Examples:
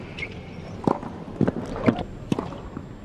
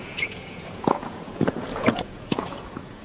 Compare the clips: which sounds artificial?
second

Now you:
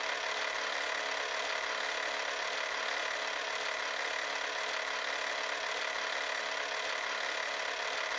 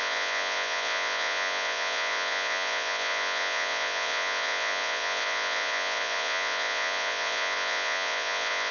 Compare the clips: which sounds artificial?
second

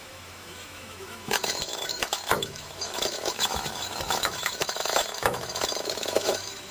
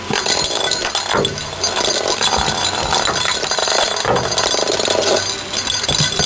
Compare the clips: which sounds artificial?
first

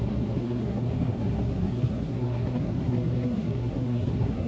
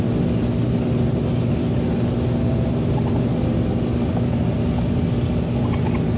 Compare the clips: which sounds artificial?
first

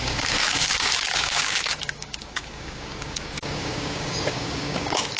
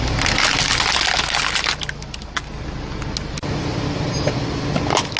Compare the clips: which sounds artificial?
first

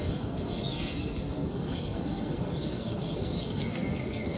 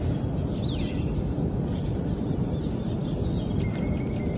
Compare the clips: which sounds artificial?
first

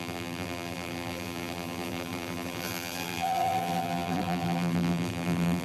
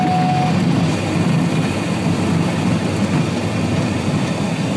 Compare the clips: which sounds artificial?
first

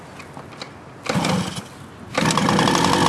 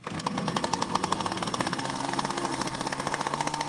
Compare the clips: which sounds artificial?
second